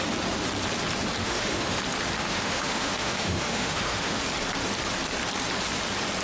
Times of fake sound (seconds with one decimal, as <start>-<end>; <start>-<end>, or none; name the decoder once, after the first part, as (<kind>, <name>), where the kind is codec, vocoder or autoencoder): 1.2-1.8 (autoencoder, DAC-VAE); 2.2-4.2

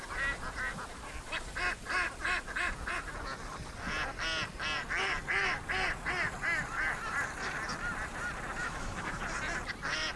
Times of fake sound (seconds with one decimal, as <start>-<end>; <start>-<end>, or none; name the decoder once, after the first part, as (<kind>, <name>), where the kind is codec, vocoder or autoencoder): 8.6-9.2 (autoencoder, DAC-VAE)

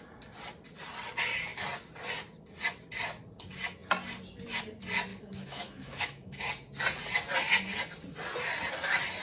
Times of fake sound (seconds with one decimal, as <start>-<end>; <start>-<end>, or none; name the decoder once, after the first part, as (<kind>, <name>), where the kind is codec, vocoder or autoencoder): 5.1-6.5 (autoencoder, DAC-VAE)

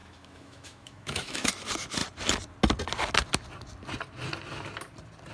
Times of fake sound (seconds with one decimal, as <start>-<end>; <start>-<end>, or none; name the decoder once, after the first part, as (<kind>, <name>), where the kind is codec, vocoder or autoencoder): 0.0-1.5 (autoencoder, DAC-VAE)

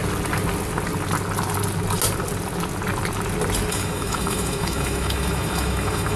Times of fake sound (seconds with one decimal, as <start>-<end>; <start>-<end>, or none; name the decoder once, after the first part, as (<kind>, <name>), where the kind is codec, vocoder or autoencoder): 3.7-6.2 (autoencoder, DAC-VAE)

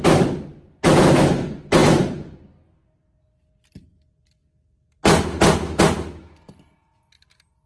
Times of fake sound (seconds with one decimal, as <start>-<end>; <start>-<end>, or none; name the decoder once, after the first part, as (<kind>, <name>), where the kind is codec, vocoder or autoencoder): none